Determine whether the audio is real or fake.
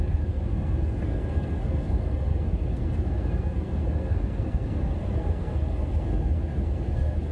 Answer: fake